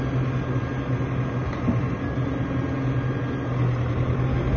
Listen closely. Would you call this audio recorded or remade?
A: recorded